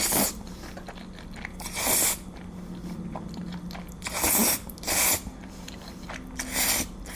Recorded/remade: recorded